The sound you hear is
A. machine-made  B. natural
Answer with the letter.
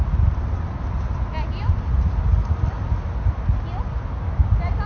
B